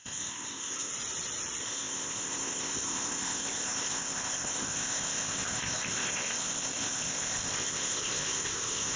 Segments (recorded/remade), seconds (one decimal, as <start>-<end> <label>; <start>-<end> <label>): 0.0-0.9 remade; 0.9-1.6 recorded; 1.6-9.0 remade